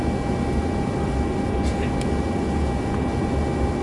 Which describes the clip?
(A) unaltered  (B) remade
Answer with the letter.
A